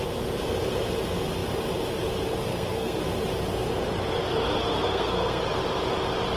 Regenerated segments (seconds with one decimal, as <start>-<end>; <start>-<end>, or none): 2.5-3.0; 4.7-5.4